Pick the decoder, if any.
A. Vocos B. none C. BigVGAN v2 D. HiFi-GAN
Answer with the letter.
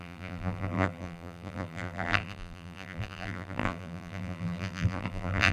C